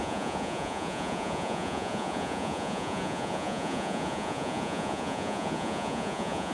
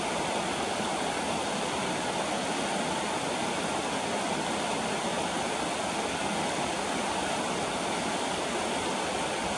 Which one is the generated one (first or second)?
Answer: first